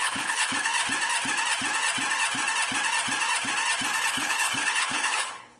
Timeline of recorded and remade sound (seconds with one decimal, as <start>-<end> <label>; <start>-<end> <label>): 0.0-0.7 remade; 0.7-4.1 recorded; 4.1-5.6 remade